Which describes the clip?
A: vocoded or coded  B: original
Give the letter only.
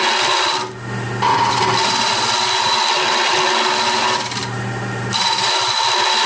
B